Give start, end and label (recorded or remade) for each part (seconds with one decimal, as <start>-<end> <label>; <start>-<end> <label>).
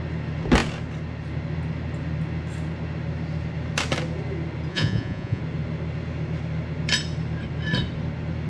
0.0-4.7 recorded; 4.7-5.4 remade; 5.4-8.5 recorded